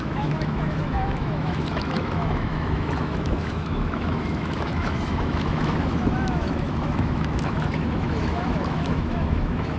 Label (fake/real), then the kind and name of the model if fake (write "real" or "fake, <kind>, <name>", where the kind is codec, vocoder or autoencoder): fake, autoencoder, DAC-VAE